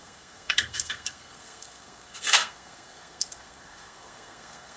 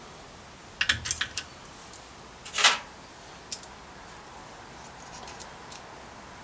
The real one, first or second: second